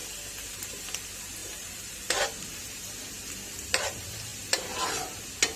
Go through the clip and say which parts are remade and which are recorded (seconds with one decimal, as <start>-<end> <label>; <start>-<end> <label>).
0.0-1.4 recorded; 1.4-1.9 remade; 1.9-5.6 recorded